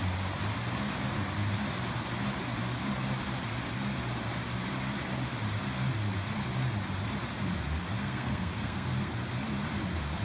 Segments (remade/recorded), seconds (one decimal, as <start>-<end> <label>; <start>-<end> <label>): 0.0-8.0 recorded; 8.0-9.1 remade; 9.1-10.2 recorded